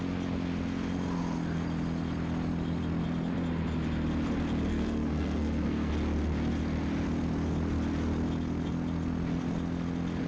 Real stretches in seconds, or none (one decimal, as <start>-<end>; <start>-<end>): 0.0-4.7; 5.9-10.3